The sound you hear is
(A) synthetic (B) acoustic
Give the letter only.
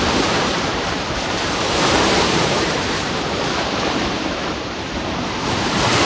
A